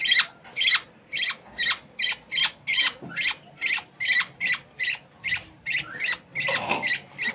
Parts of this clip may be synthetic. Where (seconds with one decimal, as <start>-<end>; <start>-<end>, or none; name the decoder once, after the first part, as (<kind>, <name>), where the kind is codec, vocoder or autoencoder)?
none